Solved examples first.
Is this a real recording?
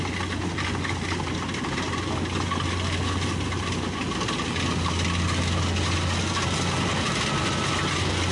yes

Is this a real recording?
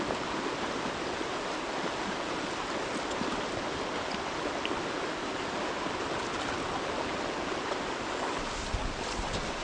yes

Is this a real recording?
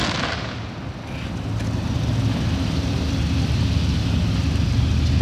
yes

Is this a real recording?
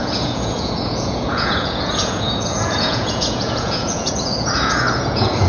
no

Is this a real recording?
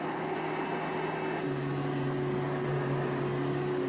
yes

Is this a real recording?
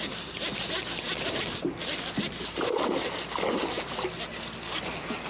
yes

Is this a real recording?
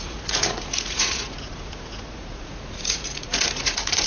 no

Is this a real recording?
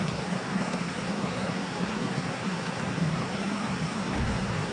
no